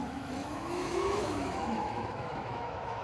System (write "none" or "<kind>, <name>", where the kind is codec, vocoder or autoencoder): autoencoder, DAC-VAE